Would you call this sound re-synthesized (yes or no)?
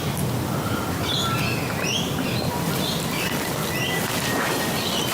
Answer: no